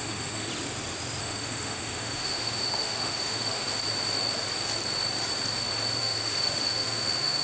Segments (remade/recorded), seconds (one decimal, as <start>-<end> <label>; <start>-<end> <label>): 0.0-0.5 remade; 0.5-1.2 recorded; 1.2-3.8 remade; 3.8-6.0 recorded; 6.0-7.4 remade